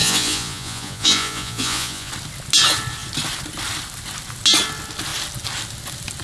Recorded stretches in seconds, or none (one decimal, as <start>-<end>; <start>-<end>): 2.1-6.2